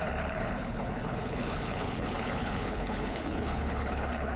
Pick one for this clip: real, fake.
fake